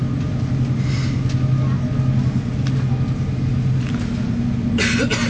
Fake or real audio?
real